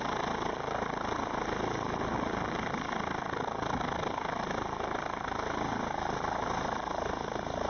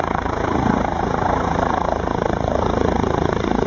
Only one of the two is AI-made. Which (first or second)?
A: second